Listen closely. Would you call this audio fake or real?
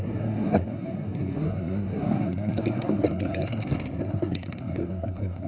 fake